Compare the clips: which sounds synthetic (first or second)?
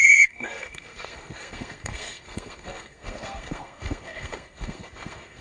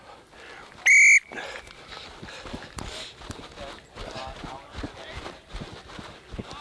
first